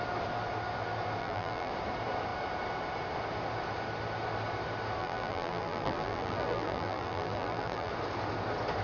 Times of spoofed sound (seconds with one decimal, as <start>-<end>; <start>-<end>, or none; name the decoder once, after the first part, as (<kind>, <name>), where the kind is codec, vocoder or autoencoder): 1.2-1.7 (vocoder, BigVGAN v2); 5.0-7.9